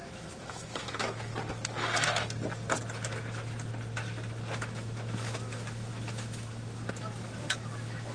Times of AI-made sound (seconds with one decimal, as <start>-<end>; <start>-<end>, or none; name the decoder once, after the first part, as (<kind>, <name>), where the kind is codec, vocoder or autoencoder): 0.0-1.3 (autoencoder, DAC-VAE); 4.6-8.1